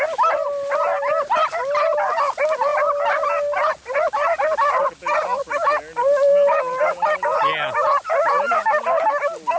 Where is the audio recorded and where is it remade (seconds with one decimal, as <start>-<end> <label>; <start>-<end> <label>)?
0.0-9.6 recorded